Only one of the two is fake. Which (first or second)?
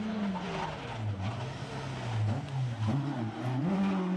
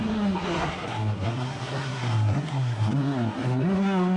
second